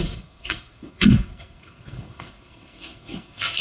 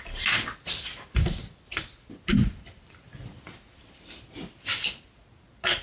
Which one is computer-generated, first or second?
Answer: first